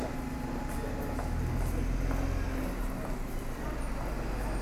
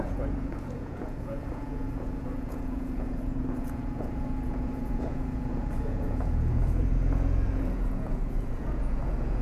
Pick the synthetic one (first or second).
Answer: second